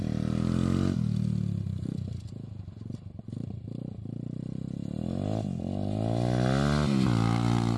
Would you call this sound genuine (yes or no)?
yes